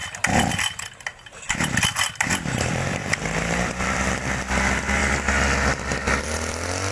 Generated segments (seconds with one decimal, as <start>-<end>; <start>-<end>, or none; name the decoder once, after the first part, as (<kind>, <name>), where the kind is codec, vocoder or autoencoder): 3.0-4.1 (vocoder, BigVGAN v2)